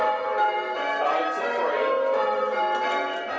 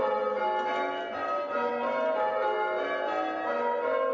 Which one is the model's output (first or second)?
first